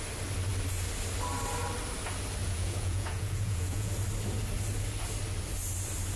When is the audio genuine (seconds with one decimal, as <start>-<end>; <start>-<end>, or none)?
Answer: 0.0-2.4; 3.9-6.2